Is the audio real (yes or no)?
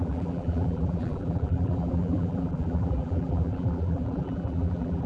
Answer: no